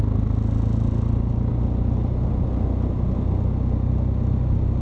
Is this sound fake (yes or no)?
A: no